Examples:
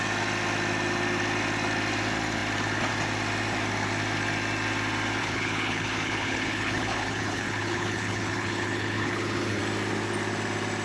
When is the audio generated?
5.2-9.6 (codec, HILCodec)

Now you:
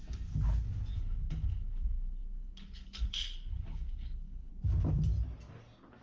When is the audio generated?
0.9-4.5 (codec, HILCodec)

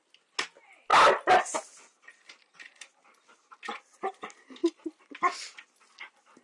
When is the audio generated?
none